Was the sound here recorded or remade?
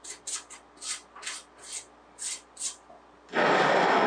recorded